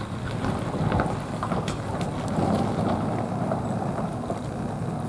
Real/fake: real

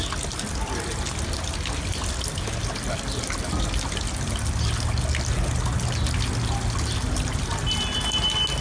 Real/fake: real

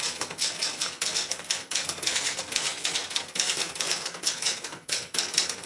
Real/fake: fake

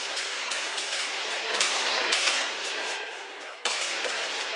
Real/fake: fake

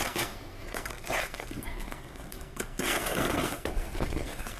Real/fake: fake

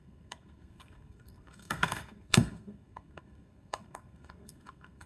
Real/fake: fake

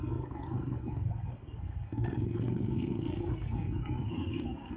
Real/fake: fake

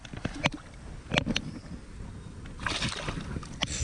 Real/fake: real